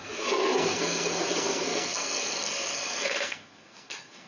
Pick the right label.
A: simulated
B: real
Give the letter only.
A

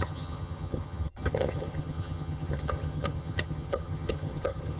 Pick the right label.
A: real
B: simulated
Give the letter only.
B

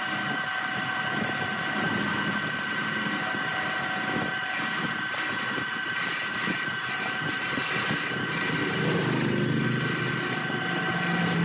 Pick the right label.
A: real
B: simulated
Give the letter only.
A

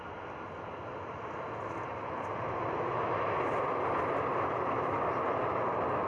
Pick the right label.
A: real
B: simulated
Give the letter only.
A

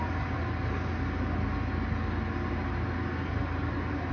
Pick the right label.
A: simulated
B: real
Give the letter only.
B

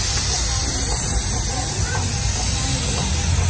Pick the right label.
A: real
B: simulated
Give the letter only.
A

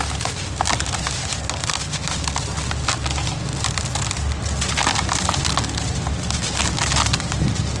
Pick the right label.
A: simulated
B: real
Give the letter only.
B